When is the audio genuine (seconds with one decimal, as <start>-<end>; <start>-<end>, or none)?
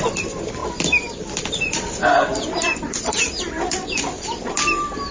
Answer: 0.0-5.1